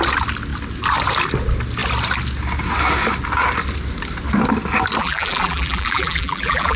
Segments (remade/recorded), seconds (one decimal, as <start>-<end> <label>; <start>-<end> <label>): 0.0-5.0 recorded; 5.0-6.8 remade